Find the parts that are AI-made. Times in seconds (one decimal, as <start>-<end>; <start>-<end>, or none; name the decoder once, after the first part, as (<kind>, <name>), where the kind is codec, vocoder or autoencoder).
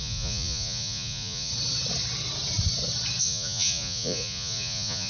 0.0-1.5 (vocoder, Vocos); 3.2-5.1